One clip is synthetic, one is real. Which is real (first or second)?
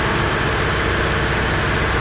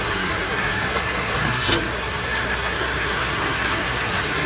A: first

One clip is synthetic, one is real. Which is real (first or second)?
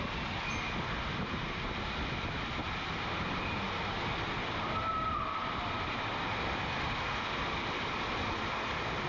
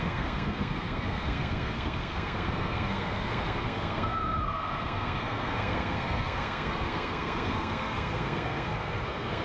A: first